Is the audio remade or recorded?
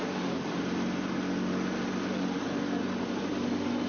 recorded